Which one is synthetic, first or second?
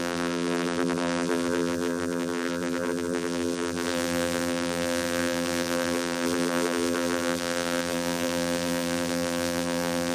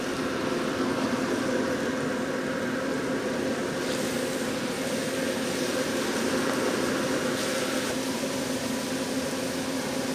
first